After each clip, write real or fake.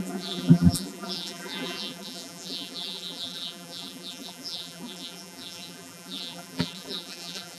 fake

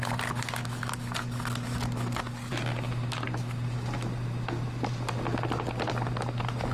real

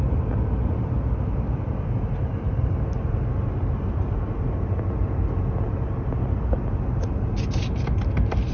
real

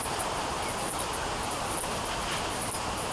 real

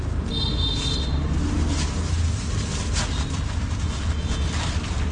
real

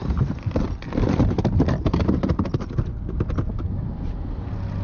real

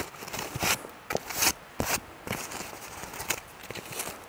real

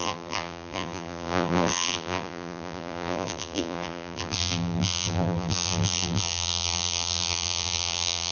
fake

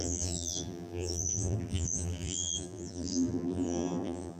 fake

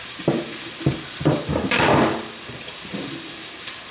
fake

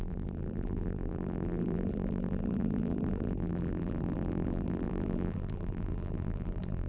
fake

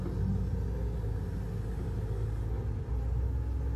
real